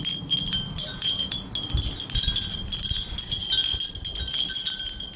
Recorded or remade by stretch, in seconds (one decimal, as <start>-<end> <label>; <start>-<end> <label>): 0.0-0.9 recorded; 0.9-1.5 remade; 1.5-5.2 recorded